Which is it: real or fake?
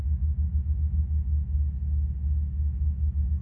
real